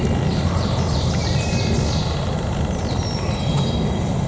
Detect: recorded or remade recorded